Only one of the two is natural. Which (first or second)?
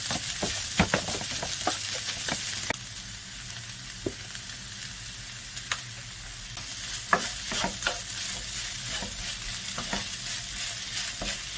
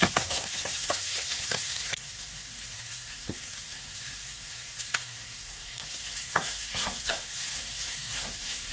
first